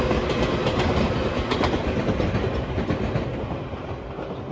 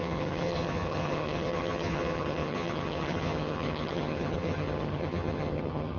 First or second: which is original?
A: first